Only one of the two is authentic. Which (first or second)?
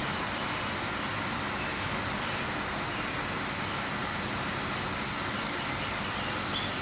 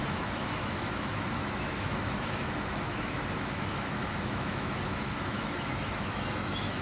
first